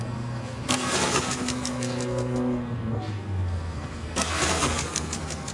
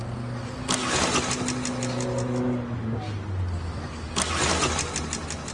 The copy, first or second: first